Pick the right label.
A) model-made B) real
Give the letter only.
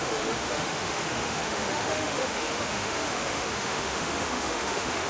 A